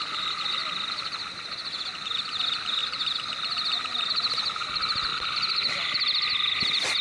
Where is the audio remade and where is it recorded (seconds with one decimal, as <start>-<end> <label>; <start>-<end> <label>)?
0.0-7.0 recorded